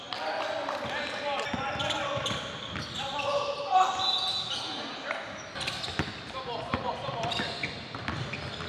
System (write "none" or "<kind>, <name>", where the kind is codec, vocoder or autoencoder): none